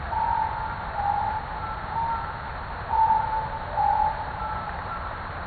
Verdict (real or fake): real